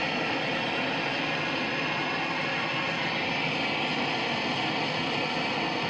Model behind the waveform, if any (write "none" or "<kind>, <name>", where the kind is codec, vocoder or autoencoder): none